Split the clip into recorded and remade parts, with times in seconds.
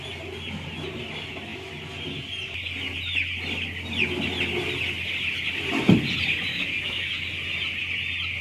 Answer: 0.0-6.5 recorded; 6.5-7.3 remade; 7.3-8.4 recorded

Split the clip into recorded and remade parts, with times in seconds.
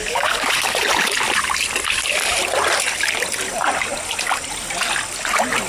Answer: 0.0-0.5 remade; 0.5-5.7 recorded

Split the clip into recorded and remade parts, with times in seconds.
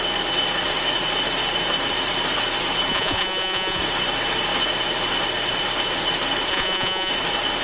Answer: 0.0-2.9 recorded; 2.9-3.8 remade; 3.8-6.5 recorded; 6.5-7.1 remade; 7.1-7.6 recorded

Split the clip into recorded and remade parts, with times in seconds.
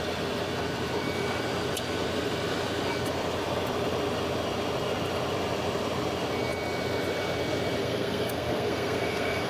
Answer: 0.0-7.8 recorded; 7.8-9.5 remade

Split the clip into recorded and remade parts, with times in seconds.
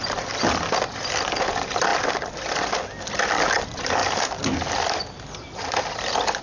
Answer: 0.0-6.4 recorded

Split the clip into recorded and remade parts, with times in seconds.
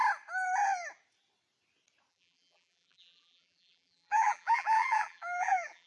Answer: 0.0-2.1 recorded; 2.1-5.9 remade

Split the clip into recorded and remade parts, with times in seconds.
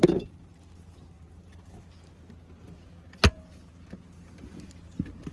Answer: 0.0-5.3 recorded